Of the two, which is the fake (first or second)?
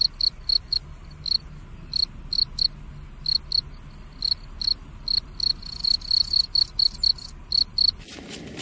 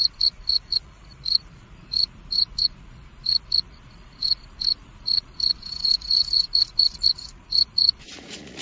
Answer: second